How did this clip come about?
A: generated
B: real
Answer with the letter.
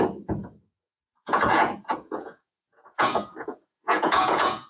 A